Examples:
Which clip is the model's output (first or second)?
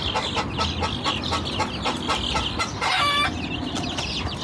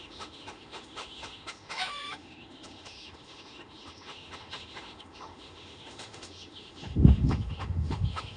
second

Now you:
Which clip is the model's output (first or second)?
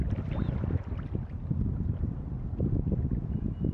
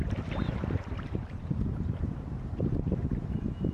second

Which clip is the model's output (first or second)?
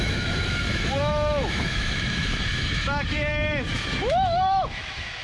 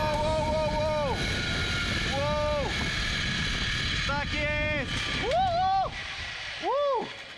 first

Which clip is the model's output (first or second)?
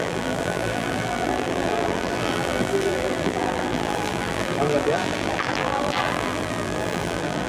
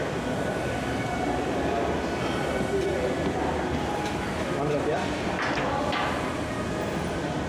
first